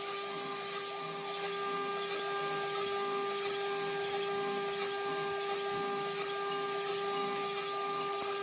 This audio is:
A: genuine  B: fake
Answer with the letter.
A